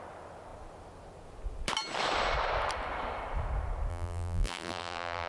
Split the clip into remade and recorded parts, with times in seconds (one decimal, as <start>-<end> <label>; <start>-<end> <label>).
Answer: 0.0-3.9 recorded; 3.9-5.3 remade